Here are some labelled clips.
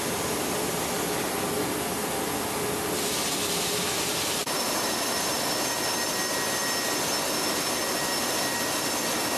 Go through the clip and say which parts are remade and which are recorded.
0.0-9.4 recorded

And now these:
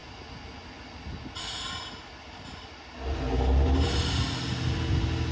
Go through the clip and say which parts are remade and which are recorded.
0.0-5.3 recorded